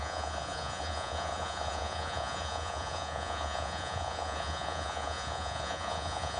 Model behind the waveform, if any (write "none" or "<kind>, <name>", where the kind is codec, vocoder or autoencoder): vocoder, Vocos